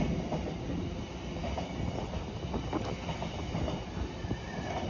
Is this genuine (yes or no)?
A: yes